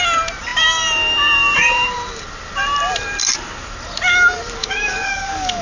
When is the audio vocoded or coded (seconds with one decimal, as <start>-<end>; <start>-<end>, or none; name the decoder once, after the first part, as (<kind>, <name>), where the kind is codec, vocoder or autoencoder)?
4.6-5.6 (codec, DAC)